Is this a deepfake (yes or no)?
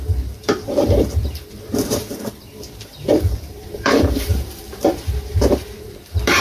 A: yes